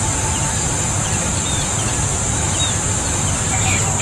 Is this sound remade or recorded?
remade